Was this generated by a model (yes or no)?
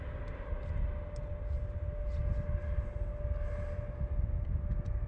no